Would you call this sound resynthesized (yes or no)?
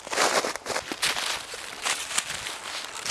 no